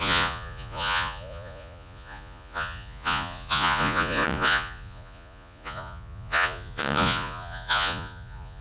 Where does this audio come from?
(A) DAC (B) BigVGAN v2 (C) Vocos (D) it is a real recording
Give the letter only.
C